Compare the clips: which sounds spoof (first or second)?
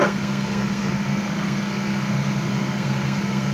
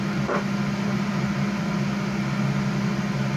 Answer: first